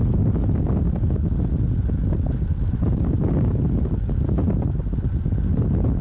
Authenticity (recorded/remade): recorded